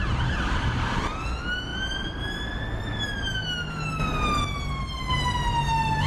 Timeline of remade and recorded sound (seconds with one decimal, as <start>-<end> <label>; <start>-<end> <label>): 0.0-6.1 recorded